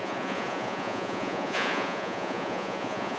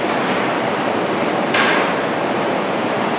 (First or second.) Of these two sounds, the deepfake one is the first